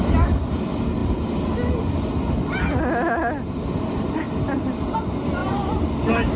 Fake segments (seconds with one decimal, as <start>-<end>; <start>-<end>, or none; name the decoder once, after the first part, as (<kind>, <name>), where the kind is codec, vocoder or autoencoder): none